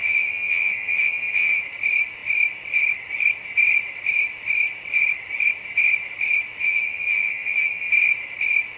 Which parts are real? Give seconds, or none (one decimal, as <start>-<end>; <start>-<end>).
1.6-6.6; 7.9-8.8